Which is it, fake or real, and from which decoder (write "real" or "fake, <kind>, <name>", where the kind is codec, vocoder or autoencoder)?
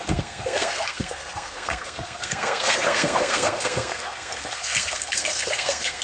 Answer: fake, codec, SNAC